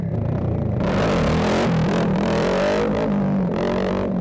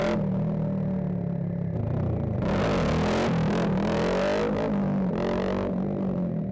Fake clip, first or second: first